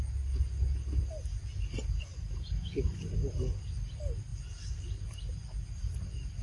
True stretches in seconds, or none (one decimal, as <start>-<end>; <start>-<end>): 0.0-6.4